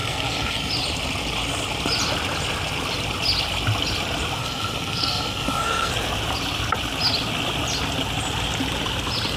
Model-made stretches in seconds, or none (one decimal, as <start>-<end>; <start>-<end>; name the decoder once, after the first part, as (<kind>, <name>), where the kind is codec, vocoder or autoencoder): 0.0-0.7 (codec, SNAC); 4.4-5.9